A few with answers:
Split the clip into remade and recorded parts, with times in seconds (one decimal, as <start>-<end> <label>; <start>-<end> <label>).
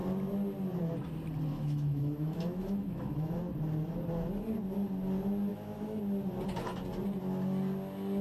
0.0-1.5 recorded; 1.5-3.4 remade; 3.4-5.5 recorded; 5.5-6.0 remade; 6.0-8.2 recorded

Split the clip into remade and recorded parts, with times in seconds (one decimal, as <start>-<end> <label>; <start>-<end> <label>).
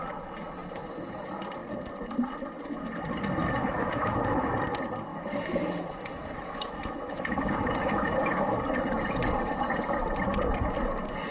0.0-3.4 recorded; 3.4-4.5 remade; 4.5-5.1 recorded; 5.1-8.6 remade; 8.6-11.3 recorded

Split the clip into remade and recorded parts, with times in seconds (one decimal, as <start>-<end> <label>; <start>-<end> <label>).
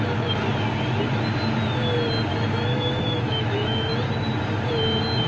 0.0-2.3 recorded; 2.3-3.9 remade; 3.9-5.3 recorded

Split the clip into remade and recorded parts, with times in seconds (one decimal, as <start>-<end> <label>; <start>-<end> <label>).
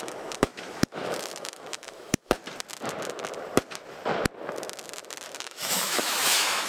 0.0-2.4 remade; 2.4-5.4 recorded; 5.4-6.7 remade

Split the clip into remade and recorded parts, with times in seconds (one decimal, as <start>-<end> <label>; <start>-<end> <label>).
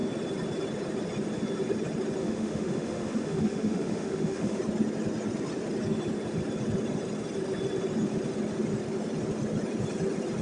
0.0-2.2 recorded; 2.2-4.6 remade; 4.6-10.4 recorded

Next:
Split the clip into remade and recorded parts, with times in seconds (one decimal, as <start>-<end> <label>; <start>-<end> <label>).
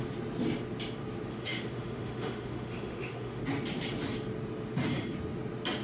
0.0-1.3 recorded; 1.3-3.4 remade; 3.4-5.8 recorded